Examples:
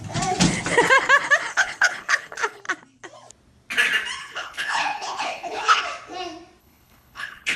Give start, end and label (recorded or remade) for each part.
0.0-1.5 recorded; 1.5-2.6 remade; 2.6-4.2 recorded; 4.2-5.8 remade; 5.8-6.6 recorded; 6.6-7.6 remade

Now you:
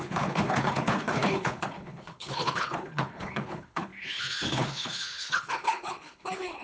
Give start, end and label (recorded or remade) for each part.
0.0-6.6 remade

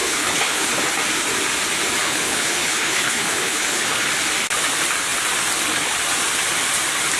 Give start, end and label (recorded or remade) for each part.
0.0-0.7 remade; 0.7-2.0 recorded; 2.0-4.1 remade; 4.1-7.2 recorded

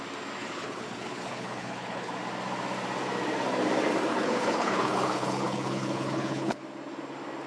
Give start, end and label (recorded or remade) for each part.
0.0-0.4 recorded; 0.4-2.1 remade; 2.1-4.1 recorded; 4.1-6.6 remade; 6.6-7.5 recorded

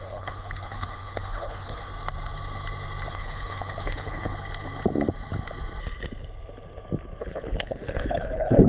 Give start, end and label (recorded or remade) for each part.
0.0-1.9 remade; 1.9-3.1 recorded; 3.1-4.3 remade; 4.3-7.2 recorded; 7.2-8.7 remade

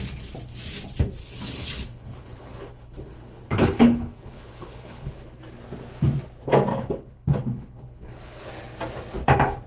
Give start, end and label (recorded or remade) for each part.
0.0-1.2 recorded; 1.2-5.4 remade; 5.4-6.7 recorded; 6.7-8.5 remade; 8.5-9.7 recorded